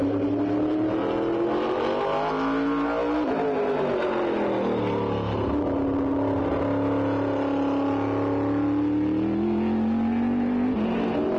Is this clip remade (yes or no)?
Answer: no